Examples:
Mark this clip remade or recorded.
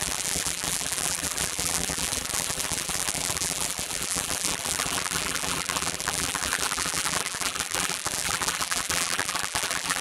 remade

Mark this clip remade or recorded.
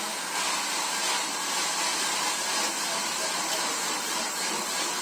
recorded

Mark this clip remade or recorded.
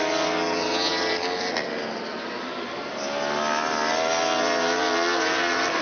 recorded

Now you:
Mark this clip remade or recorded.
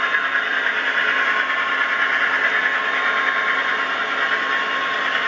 recorded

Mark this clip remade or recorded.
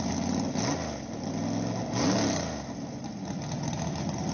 recorded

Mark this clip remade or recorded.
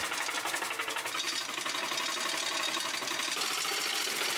recorded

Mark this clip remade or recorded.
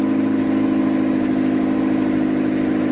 recorded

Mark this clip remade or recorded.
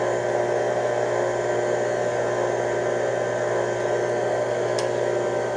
recorded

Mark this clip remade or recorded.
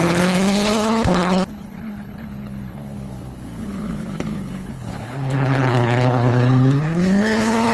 remade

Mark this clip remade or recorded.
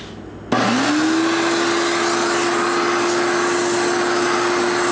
recorded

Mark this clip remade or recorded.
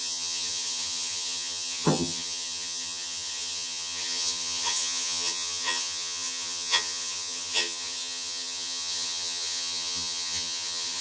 remade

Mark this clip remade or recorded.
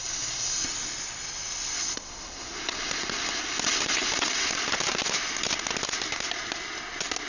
recorded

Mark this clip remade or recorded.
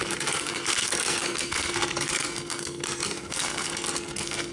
remade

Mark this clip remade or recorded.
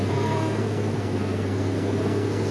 remade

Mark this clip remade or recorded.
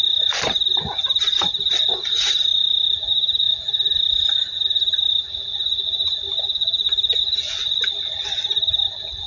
recorded